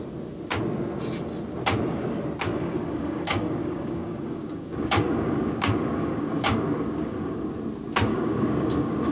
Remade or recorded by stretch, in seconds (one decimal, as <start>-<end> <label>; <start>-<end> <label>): 0.0-2.6 recorded; 2.6-7.5 remade; 7.5-8.1 recorded; 8.1-9.1 remade